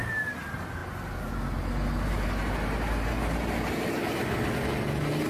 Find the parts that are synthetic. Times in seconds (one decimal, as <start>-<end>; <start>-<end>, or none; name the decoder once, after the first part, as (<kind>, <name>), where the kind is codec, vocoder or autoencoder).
none